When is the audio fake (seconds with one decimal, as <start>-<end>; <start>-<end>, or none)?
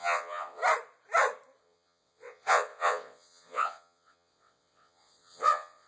0.0-0.6; 1.6-5.9